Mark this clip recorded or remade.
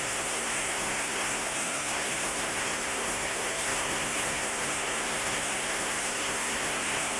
remade